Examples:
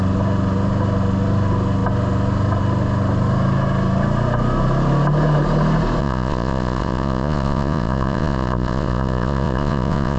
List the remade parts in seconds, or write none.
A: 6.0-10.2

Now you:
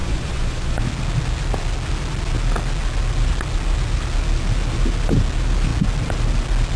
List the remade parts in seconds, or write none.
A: 0.0-0.8

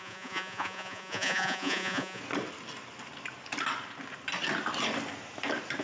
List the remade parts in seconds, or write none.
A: 0.0-2.2

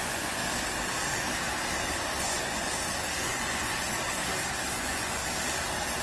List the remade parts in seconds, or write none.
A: 0.0-0.4; 2.2-2.7; 3.2-4.2; 4.8-5.2

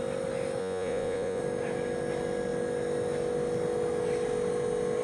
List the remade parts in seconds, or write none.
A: 0.6-1.4

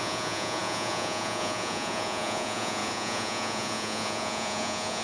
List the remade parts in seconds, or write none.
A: 0.0-5.0

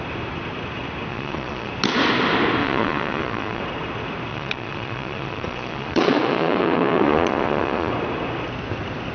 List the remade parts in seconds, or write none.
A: 1.1-1.7; 2.6-3.6; 4.3-7.9

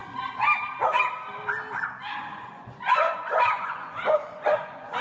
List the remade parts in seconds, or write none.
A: 2.3-5.0